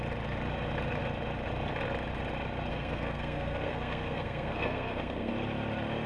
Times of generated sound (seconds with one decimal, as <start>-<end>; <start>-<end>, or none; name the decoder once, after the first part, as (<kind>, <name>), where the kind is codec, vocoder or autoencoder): 2.7-5.3 (codec, SNAC)